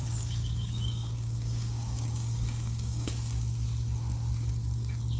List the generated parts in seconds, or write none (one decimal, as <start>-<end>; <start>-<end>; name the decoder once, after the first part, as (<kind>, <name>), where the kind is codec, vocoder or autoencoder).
0.0-3.1 (codec, DAC)